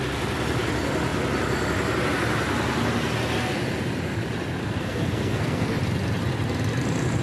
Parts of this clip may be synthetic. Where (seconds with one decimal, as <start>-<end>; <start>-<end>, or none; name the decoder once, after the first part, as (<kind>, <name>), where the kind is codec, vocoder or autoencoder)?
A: 4.6-5.8 (codec, SNAC)